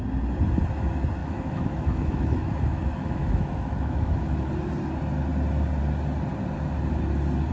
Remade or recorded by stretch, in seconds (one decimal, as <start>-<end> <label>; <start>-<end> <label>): 0.0-1.2 recorded; 1.2-4.5 remade; 4.5-7.5 recorded